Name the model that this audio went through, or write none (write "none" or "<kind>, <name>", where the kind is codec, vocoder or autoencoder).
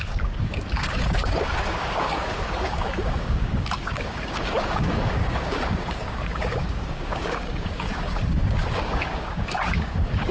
codec, DAC